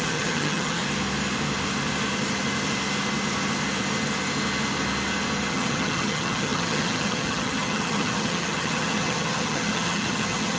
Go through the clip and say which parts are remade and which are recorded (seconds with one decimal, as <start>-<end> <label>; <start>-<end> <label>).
0.0-0.8 remade; 0.8-5.5 recorded; 5.5-10.6 remade

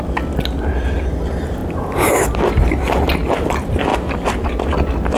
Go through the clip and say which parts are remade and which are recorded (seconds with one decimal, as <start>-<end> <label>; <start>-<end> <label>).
0.0-1.6 recorded; 1.6-2.8 remade; 2.8-3.9 recorded; 3.9-4.6 remade; 4.6-5.2 recorded

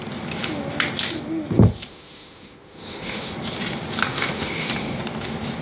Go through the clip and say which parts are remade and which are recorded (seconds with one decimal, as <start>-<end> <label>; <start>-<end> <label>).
0.0-1.9 recorded; 1.9-3.3 remade; 3.3-4.1 recorded; 4.1-4.7 remade; 4.7-5.6 recorded